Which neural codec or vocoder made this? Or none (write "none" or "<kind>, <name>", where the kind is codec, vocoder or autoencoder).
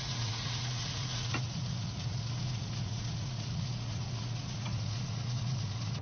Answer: vocoder, Vocos